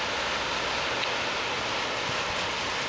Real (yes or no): yes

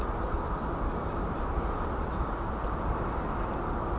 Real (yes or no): no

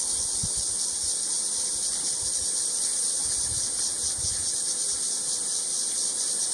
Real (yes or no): yes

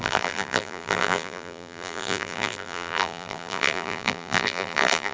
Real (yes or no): no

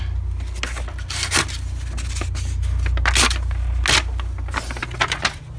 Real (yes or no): yes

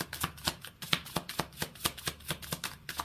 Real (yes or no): yes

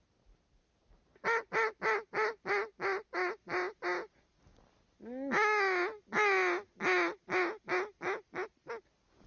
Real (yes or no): yes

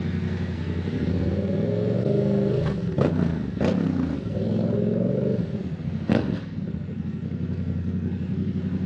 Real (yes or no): no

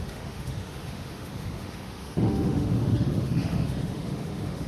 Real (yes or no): no